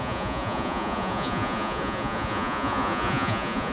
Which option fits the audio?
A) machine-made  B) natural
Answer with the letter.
A